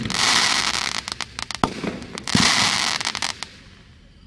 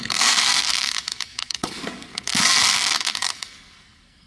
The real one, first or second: first